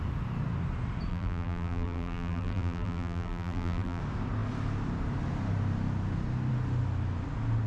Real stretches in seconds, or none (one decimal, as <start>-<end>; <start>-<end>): 0.0-1.1; 4.0-7.7